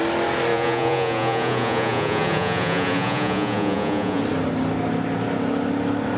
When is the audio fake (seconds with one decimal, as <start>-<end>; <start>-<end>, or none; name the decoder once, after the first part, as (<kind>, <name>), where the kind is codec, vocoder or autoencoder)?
0.5-4.2 (vocoder, Vocos)